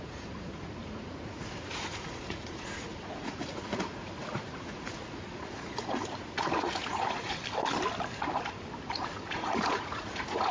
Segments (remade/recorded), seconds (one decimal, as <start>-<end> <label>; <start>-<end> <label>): 0.0-7.4 remade; 7.4-8.9 recorded; 8.9-10.5 remade